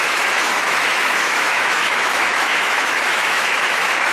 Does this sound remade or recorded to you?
remade